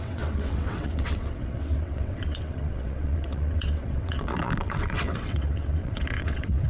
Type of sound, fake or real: fake